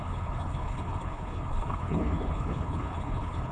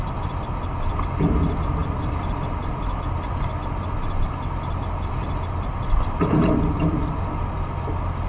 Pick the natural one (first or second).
second